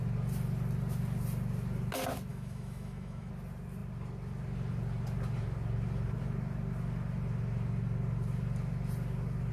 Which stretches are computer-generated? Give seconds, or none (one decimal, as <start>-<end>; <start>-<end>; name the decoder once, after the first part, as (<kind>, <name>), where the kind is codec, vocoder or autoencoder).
2.3-3.3 (autoencoder, DAC-VAE)